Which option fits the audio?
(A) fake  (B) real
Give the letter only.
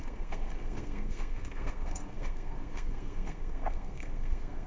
A